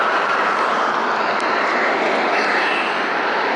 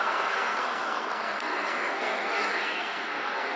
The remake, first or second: second